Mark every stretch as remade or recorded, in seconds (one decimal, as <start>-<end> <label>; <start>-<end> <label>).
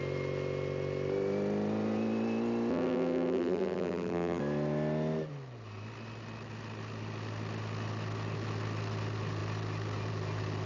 0.0-2.7 recorded; 2.7-4.4 remade; 4.4-10.7 recorded